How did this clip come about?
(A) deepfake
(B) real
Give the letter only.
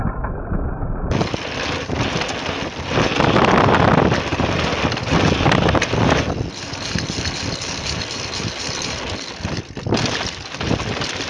B